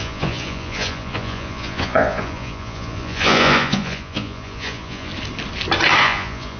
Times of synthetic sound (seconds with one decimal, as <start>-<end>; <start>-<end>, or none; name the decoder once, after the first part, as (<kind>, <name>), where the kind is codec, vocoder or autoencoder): 0.0-5.1 (vocoder, Vocos); 6.0-6.6